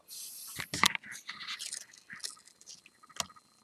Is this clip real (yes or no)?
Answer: yes